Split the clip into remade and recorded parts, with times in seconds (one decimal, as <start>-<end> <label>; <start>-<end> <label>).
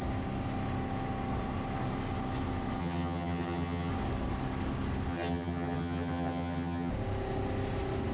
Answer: 0.0-2.8 recorded; 2.8-3.9 remade; 3.9-5.1 recorded; 5.1-6.9 remade; 6.9-8.1 recorded